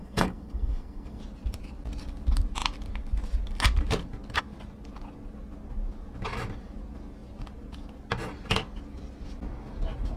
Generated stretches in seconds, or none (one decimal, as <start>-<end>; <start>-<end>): 0.0-1.2

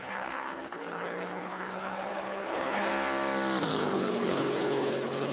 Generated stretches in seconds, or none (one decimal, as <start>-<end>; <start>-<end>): 0.0-2.9; 3.7-5.3

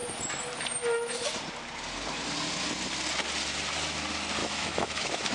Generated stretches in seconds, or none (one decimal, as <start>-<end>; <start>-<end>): 4.4-5.3

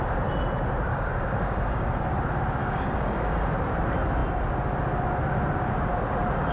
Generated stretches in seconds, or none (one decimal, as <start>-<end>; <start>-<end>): 0.9-2.0; 2.6-3.5

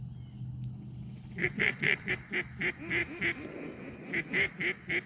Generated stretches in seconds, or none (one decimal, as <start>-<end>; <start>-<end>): 1.4-2.1